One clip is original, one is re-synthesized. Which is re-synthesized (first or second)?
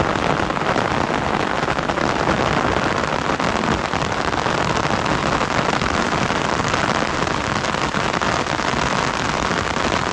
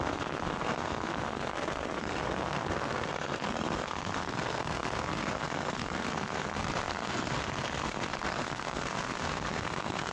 second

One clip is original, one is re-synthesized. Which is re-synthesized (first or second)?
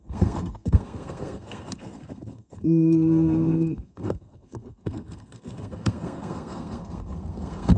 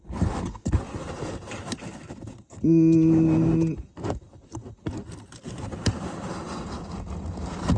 first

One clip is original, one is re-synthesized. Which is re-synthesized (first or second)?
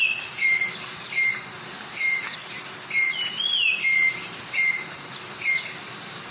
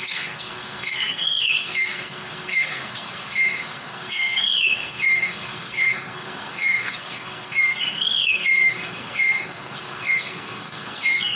second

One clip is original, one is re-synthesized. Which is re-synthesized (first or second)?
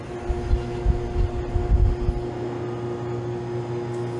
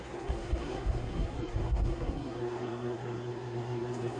second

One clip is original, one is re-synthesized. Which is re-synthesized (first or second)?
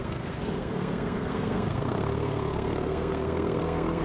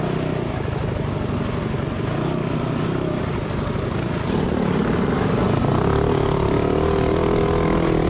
first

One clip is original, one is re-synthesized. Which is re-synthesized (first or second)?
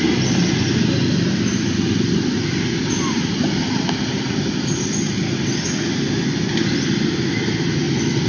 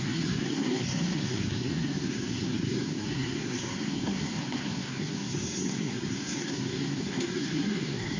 second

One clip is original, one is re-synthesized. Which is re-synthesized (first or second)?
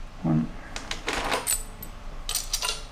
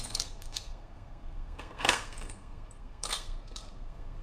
second